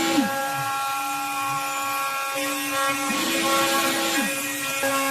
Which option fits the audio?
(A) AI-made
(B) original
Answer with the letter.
B